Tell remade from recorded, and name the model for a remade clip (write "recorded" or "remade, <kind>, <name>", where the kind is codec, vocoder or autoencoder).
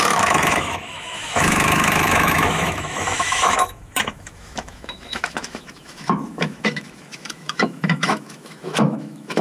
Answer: remade, autoencoder, DAC-VAE